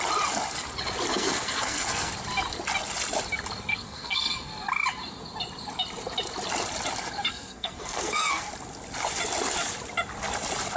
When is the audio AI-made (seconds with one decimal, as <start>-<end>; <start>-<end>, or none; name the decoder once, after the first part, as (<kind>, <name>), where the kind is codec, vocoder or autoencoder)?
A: 1.1-2.1 (codec, SNAC); 3.7-4.5; 7.3-8.5